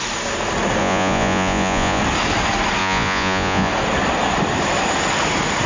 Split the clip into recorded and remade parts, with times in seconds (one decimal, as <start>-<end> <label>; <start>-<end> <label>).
0.0-0.8 recorded; 0.8-2.0 remade; 2.0-2.8 recorded; 2.8-3.7 remade; 3.7-5.7 recorded